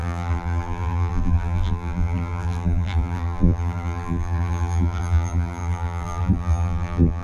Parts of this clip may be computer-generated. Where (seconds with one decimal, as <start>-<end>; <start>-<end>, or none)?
0.0-7.2